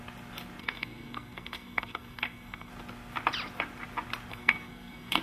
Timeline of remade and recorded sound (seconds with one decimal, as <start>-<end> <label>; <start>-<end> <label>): 0.0-0.6 recorded; 0.6-2.7 remade; 2.7-4.3 recorded; 4.3-5.2 remade